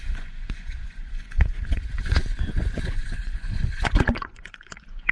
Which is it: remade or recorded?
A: remade